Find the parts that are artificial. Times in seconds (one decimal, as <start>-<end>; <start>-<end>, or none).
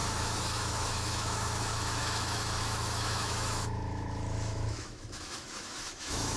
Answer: 0.0-6.4